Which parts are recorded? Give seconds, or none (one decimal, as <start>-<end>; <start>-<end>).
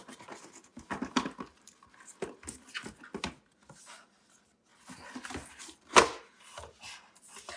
0.0-7.6